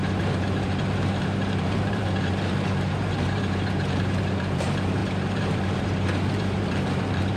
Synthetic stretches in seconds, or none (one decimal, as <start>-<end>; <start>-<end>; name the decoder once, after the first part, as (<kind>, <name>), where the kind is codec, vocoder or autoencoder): 0.0-7.4 (vocoder, BigVGAN v2)